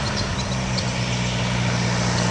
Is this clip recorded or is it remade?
recorded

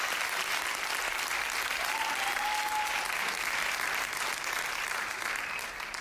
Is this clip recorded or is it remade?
recorded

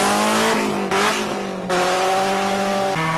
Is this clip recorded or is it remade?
recorded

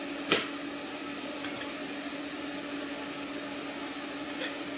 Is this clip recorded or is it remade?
recorded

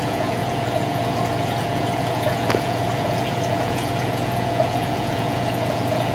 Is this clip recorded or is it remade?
remade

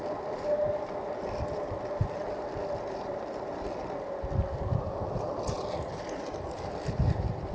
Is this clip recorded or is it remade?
recorded